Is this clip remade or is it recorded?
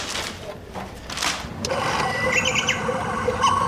remade